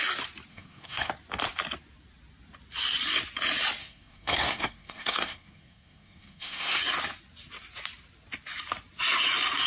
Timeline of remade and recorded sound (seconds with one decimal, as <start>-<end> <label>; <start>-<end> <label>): 0.0-0.5 recorded; 0.5-1.1 remade; 1.1-3.8 recorded; 3.8-6.8 remade; 6.8-9.7 recorded